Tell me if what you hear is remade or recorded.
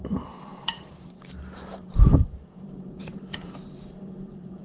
remade